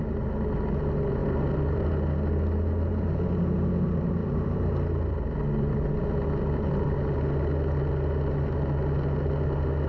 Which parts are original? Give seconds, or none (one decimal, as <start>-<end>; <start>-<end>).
0.0-1.2; 1.9-4.2; 7.0-9.9